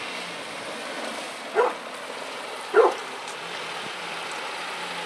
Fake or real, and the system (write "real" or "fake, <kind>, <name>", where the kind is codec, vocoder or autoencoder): real